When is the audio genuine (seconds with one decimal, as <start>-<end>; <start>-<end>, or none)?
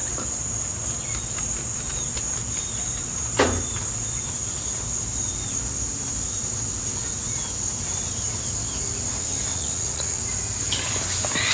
0.0-9.5; 10.2-11.5